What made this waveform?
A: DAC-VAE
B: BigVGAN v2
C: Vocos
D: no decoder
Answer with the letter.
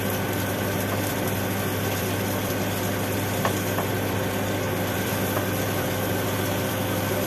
B